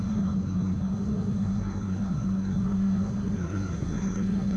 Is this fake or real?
fake